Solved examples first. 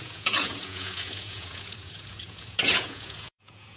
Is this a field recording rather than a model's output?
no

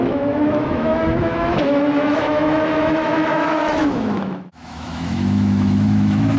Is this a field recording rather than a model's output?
no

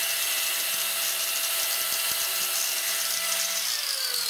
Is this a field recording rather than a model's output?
yes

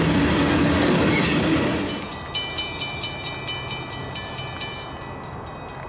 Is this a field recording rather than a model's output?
yes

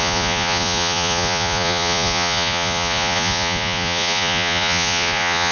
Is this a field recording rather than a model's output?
no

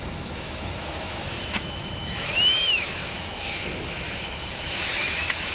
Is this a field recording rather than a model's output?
no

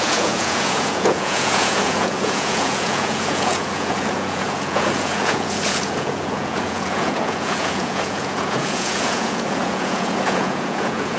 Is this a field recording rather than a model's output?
no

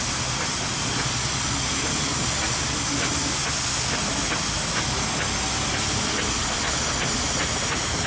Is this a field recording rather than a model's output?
yes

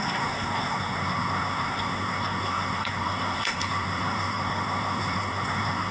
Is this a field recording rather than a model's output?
no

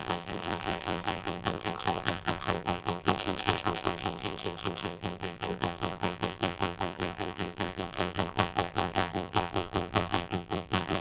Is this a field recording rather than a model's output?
no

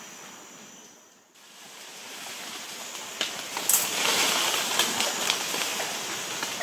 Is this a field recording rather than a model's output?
yes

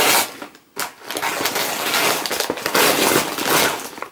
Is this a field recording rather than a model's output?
yes